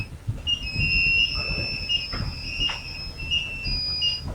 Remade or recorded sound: recorded